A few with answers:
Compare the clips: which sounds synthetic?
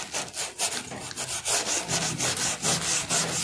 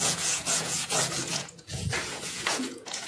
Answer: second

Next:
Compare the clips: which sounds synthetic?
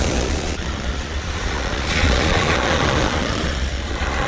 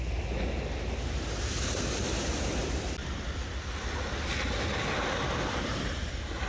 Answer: first